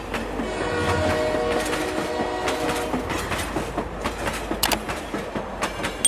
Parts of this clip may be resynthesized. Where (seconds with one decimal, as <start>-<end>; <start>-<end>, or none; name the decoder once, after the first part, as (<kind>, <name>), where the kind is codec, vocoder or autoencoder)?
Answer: none